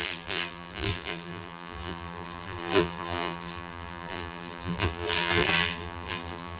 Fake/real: fake